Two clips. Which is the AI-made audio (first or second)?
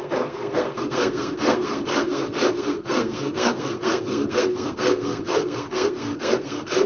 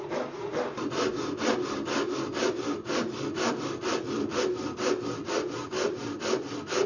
first